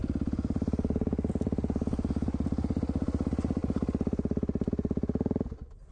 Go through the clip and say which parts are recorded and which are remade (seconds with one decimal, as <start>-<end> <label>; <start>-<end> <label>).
0.0-5.9 recorded